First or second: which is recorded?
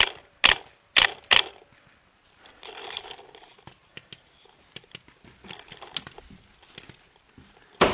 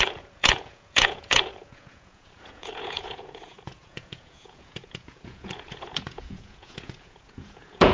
first